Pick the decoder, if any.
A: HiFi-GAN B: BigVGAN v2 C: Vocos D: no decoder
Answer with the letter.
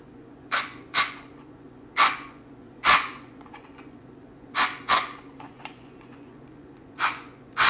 C